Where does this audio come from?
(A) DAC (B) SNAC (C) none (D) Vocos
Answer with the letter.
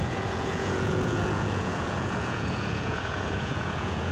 D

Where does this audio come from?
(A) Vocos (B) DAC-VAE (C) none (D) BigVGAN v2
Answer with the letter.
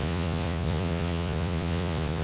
A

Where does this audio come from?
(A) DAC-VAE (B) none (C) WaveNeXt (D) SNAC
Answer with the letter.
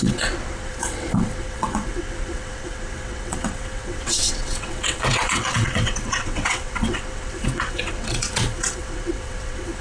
C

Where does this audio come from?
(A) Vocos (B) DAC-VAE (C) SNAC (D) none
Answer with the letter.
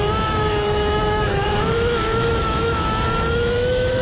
B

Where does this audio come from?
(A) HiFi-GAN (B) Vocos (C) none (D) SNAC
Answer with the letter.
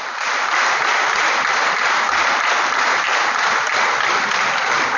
C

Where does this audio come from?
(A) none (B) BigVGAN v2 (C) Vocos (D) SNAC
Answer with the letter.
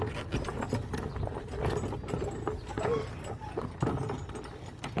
A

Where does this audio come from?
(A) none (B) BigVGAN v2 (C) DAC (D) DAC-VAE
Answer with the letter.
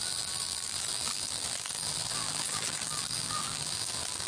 B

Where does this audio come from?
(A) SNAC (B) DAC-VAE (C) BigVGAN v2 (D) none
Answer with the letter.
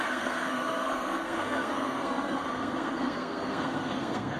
A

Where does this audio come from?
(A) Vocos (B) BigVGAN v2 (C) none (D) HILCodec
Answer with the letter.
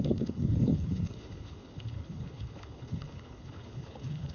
D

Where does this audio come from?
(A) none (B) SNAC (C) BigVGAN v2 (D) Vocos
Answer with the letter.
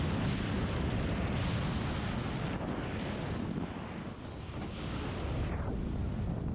A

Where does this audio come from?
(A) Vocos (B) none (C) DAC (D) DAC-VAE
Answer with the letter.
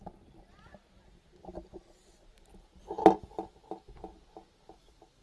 B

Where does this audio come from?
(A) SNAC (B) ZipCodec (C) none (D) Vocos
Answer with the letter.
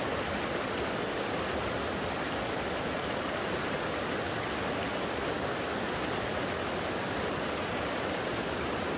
C